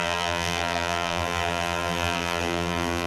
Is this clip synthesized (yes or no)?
yes